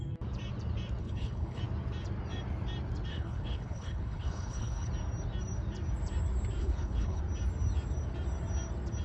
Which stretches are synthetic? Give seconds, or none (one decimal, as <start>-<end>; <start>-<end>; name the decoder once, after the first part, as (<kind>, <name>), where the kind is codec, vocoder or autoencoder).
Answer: 1.0-1.6 (codec, HILCodec); 3.1-4.9; 6.6-7.2